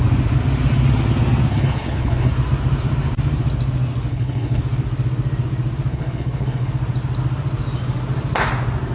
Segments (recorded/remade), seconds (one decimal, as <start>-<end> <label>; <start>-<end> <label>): 0.0-1.5 recorded; 1.5-2.3 remade; 2.3-4.1 recorded; 4.1-4.6 remade; 4.6-5.9 recorded; 5.9-6.7 remade; 6.7-8.9 recorded